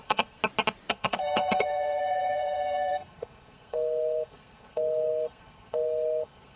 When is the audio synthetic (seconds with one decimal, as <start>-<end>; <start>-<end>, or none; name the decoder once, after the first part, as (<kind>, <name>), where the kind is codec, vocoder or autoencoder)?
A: 0.0-0.4 (codec, SNAC); 0.9-6.6